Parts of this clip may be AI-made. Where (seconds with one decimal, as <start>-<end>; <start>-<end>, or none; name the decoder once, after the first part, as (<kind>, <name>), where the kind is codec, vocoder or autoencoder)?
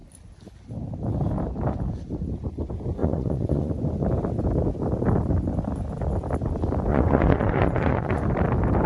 3.0-3.7 (vocoder, Vocos); 6.9-8.2